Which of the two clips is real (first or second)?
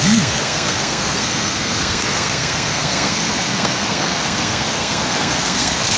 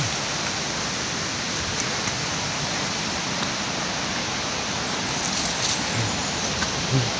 second